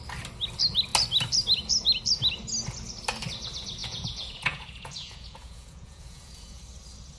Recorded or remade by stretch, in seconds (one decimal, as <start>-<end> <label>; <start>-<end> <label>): 0.0-3.8 recorded; 3.8-6.6 remade; 6.6-7.2 recorded